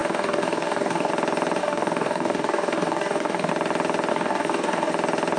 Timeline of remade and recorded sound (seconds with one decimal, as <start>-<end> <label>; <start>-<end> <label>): 0.0-1.1 remade; 1.1-1.6 recorded; 1.6-3.5 remade; 3.5-4.1 recorded; 4.1-4.9 remade; 4.9-5.4 recorded